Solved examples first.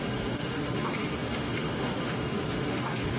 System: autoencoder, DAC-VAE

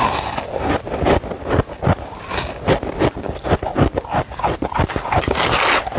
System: none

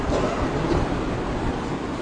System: none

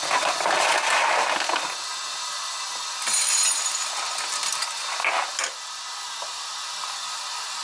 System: none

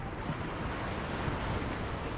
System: none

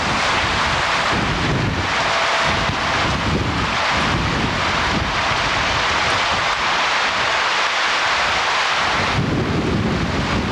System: none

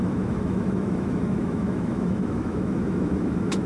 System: autoencoder, DAC-VAE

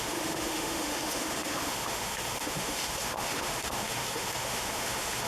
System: autoencoder, DAC-VAE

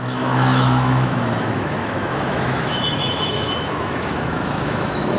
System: autoencoder, DAC-VAE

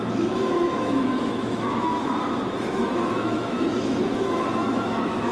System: autoencoder, DAC-VAE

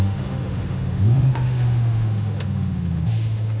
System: autoencoder, DAC-VAE